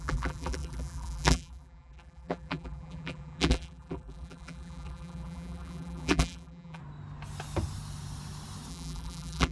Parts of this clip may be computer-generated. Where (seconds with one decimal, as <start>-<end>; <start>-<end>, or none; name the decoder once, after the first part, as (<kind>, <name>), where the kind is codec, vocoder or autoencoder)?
0.0-6.8 (vocoder, BigVGAN v2); 8.7-9.5